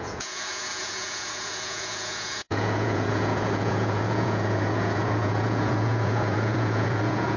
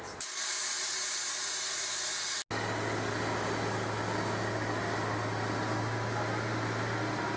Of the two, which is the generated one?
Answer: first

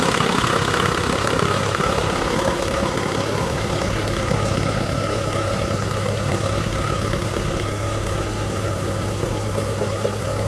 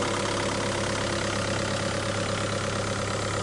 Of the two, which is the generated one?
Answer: first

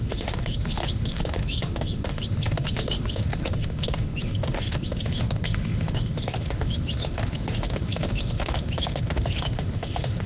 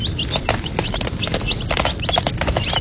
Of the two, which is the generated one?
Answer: first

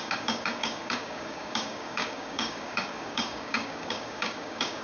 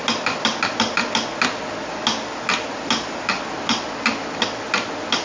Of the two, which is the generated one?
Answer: first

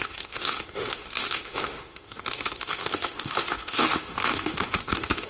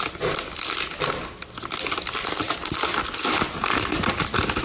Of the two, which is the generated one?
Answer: first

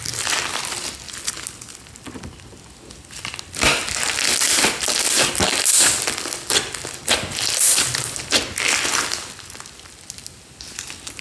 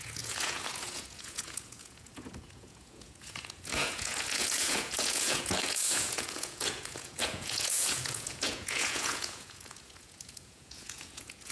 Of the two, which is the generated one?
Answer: second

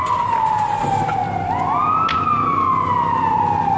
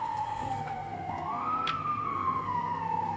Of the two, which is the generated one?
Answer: second